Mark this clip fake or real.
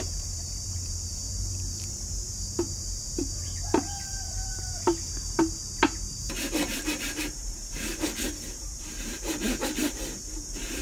fake